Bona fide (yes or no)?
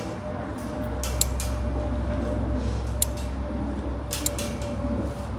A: yes